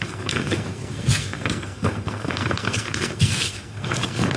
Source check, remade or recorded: remade